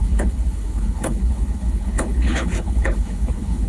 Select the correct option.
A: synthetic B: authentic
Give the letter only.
A